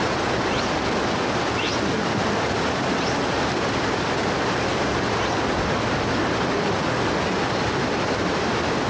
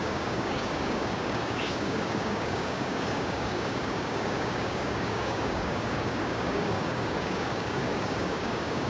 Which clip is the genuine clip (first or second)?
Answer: first